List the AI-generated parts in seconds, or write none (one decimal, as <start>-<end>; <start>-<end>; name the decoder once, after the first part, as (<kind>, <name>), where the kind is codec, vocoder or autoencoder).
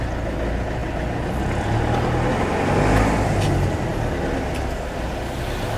none